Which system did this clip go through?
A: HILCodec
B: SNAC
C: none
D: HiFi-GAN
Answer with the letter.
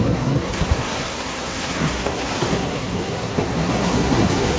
B